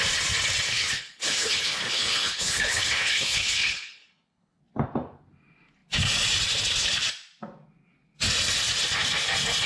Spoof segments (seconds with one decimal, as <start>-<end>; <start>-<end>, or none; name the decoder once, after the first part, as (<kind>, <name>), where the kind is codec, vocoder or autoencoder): 0.7-4.6 (codec, HILCodec)

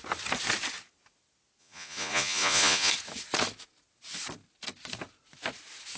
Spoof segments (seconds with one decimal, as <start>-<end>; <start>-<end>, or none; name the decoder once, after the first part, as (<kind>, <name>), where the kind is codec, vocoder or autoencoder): 1.6-2.9 (vocoder, Vocos)